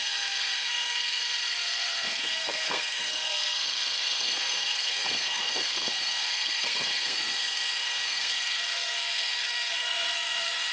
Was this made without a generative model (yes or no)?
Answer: no